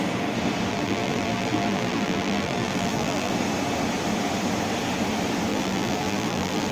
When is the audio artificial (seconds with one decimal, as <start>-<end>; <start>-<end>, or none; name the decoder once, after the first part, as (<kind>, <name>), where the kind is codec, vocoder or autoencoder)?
0.7-3.3 (vocoder, BigVGAN v2); 5.5-6.7